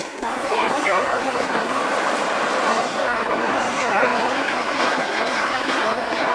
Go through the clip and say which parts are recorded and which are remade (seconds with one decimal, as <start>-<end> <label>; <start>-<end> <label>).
0.0-1.8 remade; 1.8-2.7 recorded; 2.7-6.3 remade